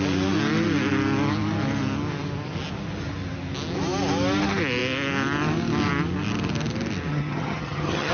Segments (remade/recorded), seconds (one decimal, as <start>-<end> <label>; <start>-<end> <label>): 0.0-7.1 recorded; 7.1-8.1 remade